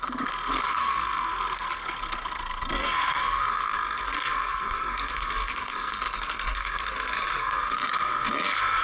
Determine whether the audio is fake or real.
fake